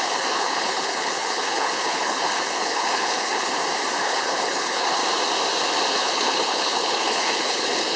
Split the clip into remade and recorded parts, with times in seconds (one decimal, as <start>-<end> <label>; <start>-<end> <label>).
0.0-3.5 remade; 3.5-4.0 recorded; 4.0-5.0 remade; 5.0-5.9 recorded; 5.9-8.0 remade